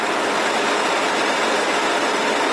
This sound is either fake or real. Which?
real